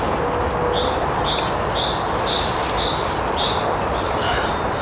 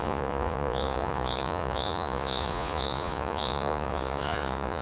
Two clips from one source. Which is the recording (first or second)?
first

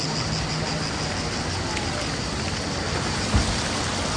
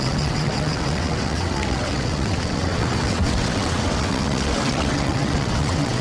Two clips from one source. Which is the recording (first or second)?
first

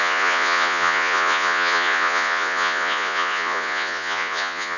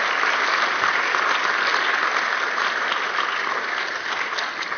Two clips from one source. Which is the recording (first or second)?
second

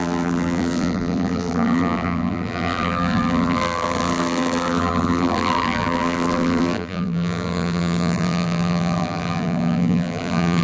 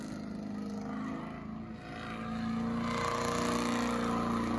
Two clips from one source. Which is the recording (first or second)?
second